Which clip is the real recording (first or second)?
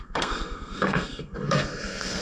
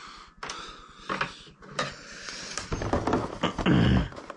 second